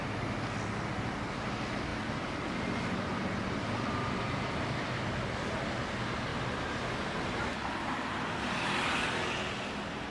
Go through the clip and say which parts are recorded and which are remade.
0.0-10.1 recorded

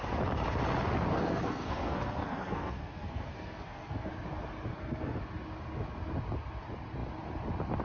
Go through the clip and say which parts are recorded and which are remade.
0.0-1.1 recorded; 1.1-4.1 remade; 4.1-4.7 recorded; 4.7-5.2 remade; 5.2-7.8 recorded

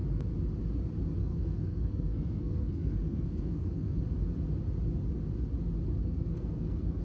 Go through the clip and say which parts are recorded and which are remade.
0.0-1.2 recorded; 1.2-4.0 remade; 4.0-6.0 recorded; 6.0-7.0 remade

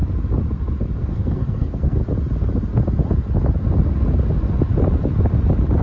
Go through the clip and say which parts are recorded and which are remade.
0.0-1.0 recorded; 1.0-2.0 remade; 2.0-5.8 recorded

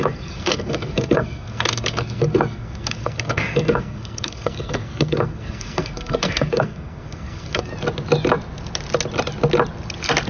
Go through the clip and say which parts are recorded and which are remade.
0.0-7.7 remade; 7.7-10.3 recorded